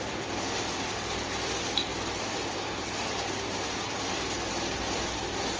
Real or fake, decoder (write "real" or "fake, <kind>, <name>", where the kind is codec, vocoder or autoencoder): fake, vocoder, BigVGAN v2